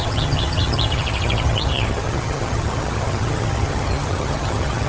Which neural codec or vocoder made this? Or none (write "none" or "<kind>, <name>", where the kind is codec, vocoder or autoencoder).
vocoder, HiFi-GAN